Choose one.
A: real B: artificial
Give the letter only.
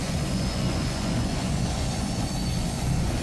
B